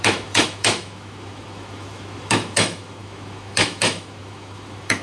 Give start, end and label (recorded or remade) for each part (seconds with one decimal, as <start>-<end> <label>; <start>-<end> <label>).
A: 0.0-5.0 remade